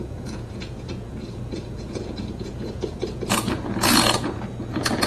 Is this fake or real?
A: fake